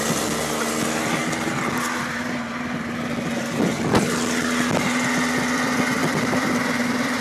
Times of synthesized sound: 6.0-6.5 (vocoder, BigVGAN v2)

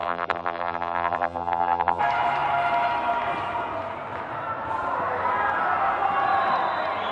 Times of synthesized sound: 0.0-2.0 (vocoder, BigVGAN v2)

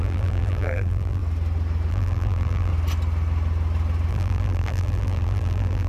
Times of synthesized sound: 0.0-1.2 (vocoder, BigVGAN v2); 1.9-2.7; 4.1-5.9

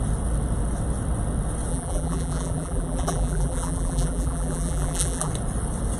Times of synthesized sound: 1.7-5.3 (vocoder, BigVGAN v2)

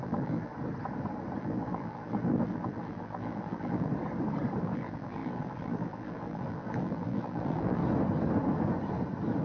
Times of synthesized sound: 0.0-0.5 (vocoder, BigVGAN v2); 1.4-3.9; 4.6-7.8

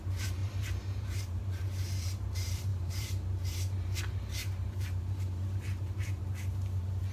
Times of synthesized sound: 0.0-7.1 (vocoder, BigVGAN v2)

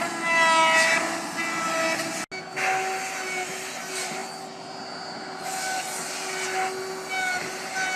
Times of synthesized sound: none

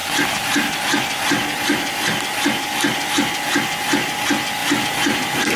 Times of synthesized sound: none